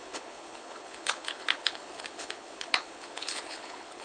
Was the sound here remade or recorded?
remade